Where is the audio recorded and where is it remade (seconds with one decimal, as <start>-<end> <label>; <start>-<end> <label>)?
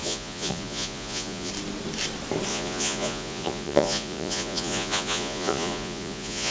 0.0-1.5 remade; 1.5-2.5 recorded; 2.5-6.5 remade